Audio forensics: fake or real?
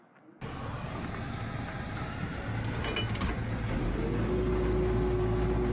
real